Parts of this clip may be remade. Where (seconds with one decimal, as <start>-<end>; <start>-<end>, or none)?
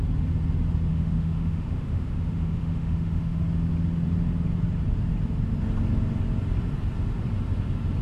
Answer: 0.9-3.4